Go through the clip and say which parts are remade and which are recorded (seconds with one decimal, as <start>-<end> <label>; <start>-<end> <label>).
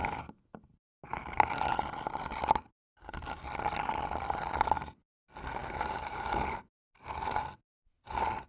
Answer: 0.0-8.5 recorded